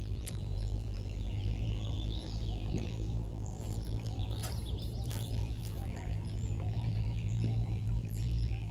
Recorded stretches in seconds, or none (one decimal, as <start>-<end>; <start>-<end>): 4.4-5.1